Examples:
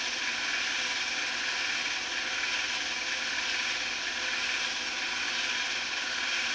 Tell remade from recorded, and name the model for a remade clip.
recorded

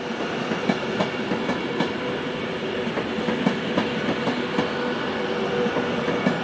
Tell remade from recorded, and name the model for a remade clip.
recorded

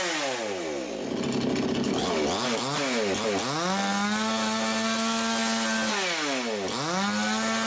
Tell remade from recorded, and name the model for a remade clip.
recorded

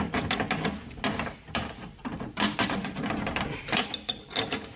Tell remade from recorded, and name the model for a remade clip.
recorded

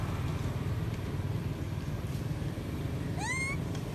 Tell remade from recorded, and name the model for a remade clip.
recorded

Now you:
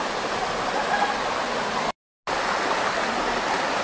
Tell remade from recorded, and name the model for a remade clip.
recorded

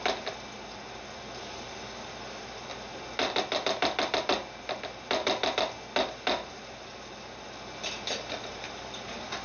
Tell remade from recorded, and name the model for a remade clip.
recorded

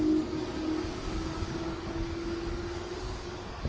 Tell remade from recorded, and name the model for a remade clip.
remade, codec, DAC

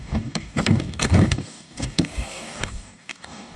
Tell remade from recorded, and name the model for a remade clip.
remade, codec, DAC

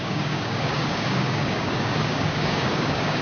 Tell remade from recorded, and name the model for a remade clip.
remade, codec, DAC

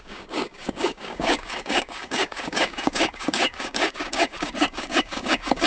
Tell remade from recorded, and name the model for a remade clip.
remade, codec, DAC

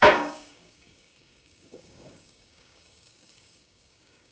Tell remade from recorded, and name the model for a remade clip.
remade, codec, DAC